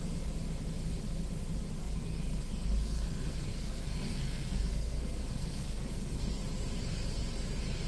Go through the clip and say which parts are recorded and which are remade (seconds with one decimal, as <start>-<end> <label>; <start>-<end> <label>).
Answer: 0.0-1.8 recorded; 1.8-6.4 remade; 6.4-7.9 recorded